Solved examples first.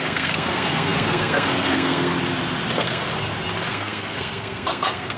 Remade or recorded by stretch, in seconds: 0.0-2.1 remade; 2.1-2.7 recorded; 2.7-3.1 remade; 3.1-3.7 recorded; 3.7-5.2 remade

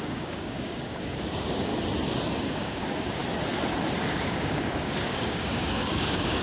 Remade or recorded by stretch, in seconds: 0.0-1.7 remade; 1.7-2.5 recorded; 2.5-3.2 remade; 3.2-4.0 recorded; 4.0-6.4 remade

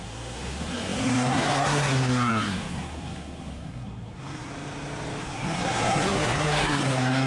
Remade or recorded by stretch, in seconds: 0.0-4.5 remade; 4.5-5.2 recorded; 5.2-7.3 remade

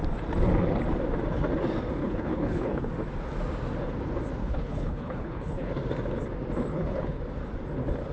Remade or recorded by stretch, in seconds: 0.0-2.0 recorded; 2.0-2.9 remade; 2.9-4.4 recorded; 4.4-5.7 remade; 5.7-6.7 recorded; 6.7-7.2 remade; 7.2-8.1 recorded

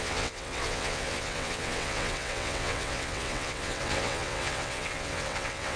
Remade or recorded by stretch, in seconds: 0.0-5.8 remade

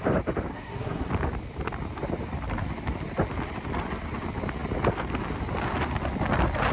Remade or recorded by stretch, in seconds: 0.0-0.5 recorded; 0.5-1.1 remade; 1.1-6.7 recorded

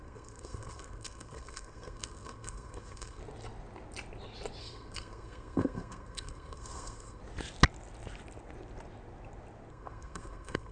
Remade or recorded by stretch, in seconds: 0.0-3.2 remade; 3.2-4.6 recorded; 4.6-7.2 remade; 7.2-9.7 recorded; 9.7-10.7 remade

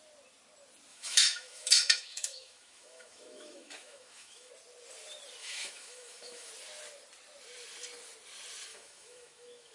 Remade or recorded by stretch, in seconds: 0.0-0.9 recorded; 0.9-4.5 remade; 4.5-5.4 recorded; 5.4-6.5 remade; 6.5-8.7 recorded; 8.7-9.7 remade